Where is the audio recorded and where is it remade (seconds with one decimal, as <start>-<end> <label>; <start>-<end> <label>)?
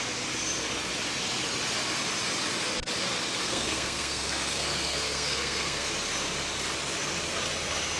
0.0-3.4 recorded; 3.4-5.9 remade; 5.9-8.0 recorded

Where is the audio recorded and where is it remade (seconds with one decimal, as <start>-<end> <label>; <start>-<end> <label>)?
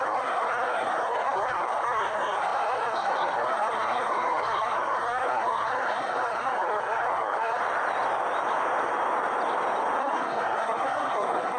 0.0-7.6 remade; 7.6-10.0 recorded; 10.0-11.6 remade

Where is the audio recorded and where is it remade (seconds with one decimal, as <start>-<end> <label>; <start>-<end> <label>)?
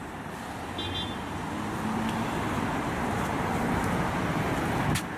0.0-5.2 recorded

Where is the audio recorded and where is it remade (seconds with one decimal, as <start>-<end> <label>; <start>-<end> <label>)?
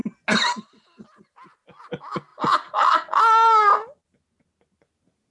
0.0-5.3 recorded